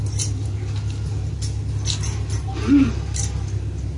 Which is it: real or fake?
real